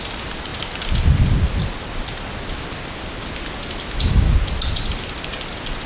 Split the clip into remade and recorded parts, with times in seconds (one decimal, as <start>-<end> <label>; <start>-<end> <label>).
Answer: 0.0-5.9 recorded